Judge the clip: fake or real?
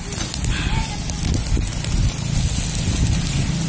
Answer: real